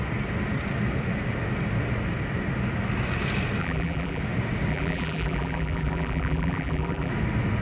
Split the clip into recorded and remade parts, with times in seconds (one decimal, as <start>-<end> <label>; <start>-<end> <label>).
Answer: 0.0-3.6 recorded; 3.6-4.2 remade; 4.2-4.7 recorded; 4.7-7.1 remade; 7.1-7.6 recorded

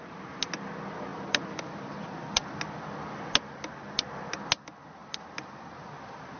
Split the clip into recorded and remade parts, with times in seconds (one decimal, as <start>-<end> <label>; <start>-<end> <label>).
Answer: 0.0-6.4 recorded

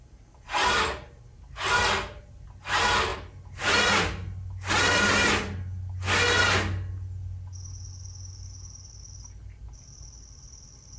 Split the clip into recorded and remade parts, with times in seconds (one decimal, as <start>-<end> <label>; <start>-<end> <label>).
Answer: 0.0-11.0 recorded